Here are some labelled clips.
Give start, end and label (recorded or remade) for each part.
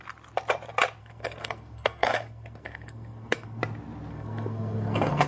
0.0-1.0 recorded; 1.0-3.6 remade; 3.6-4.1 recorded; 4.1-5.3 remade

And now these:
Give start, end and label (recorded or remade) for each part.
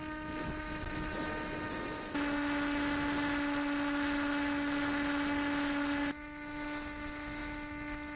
0.0-8.2 recorded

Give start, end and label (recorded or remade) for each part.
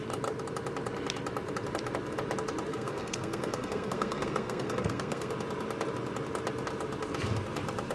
0.0-2.7 recorded; 2.7-5.3 remade; 5.3-7.9 recorded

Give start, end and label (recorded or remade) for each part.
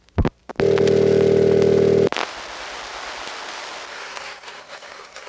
0.0-3.9 recorded; 3.9-5.3 remade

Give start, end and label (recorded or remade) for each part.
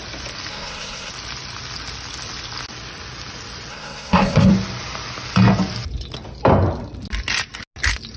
0.0-0.5 recorded; 0.5-1.1 remade; 1.1-3.7 recorded; 3.7-4.5 remade; 4.5-8.2 recorded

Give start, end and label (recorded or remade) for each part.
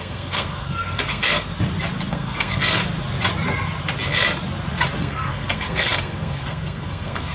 0.0-1.5 remade; 1.5-2.1 recorded; 2.1-2.8 remade; 2.8-5.0 recorded; 5.0-7.3 remade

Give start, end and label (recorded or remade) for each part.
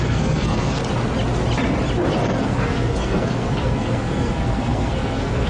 0.0-0.8 remade; 0.8-2.1 recorded; 2.1-5.5 remade